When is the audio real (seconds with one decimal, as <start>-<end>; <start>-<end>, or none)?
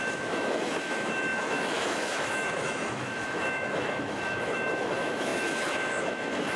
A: none